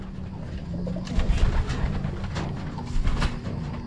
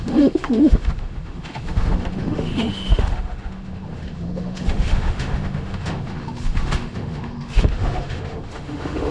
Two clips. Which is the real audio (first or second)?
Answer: first